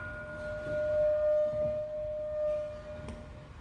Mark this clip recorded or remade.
recorded